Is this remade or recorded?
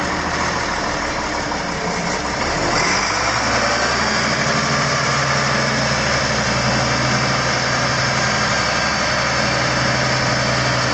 recorded